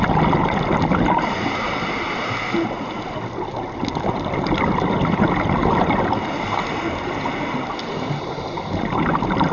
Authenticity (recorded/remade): recorded